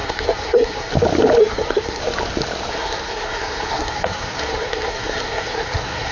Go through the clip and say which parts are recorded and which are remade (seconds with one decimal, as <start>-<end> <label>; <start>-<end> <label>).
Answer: 0.0-0.9 remade; 0.9-1.4 recorded; 1.4-2.0 remade; 2.0-2.7 recorded; 2.7-6.1 remade